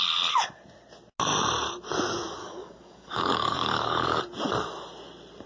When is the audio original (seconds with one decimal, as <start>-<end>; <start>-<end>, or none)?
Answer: 0.0-2.4; 4.2-5.5